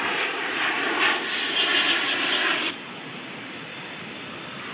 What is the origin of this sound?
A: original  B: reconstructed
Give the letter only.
A